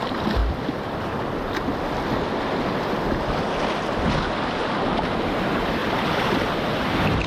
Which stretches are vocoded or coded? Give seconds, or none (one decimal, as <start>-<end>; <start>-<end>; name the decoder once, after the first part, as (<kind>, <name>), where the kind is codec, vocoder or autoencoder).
0.4-1.2 (vocoder, BigVGAN v2); 5.8-7.3